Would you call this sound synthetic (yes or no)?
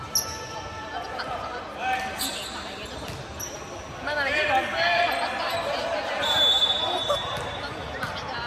no